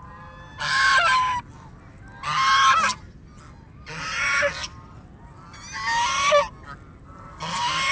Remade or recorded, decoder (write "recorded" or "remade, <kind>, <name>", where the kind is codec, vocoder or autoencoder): recorded